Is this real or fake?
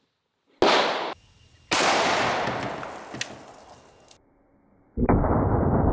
real